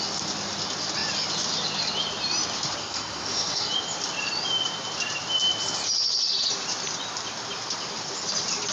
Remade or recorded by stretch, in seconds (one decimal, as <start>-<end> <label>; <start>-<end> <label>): 0.0-2.8 recorded; 2.8-3.7 remade; 3.7-8.7 recorded